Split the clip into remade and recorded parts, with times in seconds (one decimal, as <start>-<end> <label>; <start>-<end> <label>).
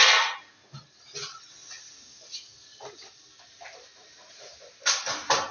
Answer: 0.0-5.5 recorded